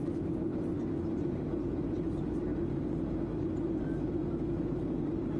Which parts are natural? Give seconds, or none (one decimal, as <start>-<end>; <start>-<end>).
0.0-5.4